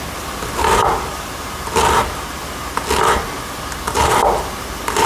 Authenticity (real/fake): real